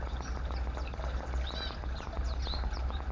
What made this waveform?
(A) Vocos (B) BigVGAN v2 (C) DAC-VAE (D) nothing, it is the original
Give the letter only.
D